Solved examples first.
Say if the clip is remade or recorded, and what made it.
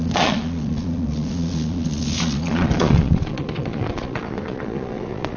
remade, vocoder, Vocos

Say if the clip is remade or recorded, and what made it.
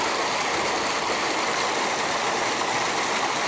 recorded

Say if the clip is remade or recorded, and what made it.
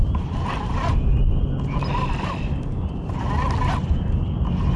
recorded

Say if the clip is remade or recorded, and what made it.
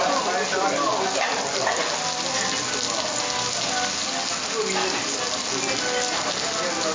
recorded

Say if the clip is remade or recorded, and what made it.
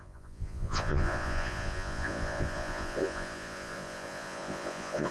remade, vocoder, Vocos